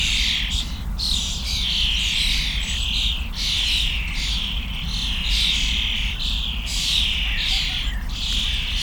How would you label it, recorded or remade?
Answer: recorded